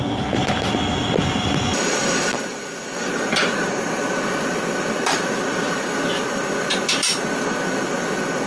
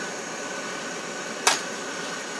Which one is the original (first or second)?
first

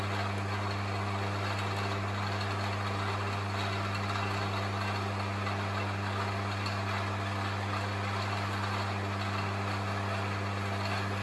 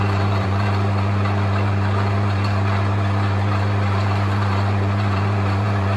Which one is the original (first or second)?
first